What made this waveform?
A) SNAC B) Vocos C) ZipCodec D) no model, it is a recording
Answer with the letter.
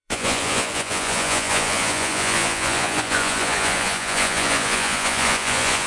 B